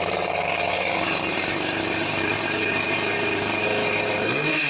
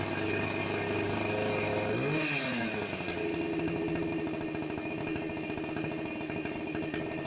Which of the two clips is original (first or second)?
second